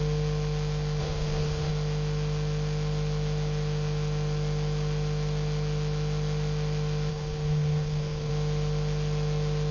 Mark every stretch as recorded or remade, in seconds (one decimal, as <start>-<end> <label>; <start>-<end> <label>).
0.0-1.0 recorded; 1.0-1.7 remade; 1.7-7.1 recorded; 7.1-8.3 remade; 8.3-9.7 recorded